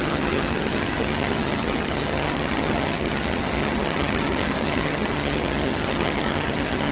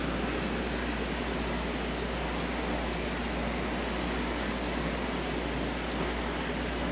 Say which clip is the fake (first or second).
first